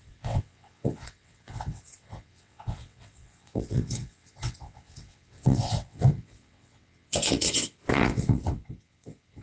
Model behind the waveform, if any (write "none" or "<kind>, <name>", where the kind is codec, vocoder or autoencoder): vocoder, WaveNeXt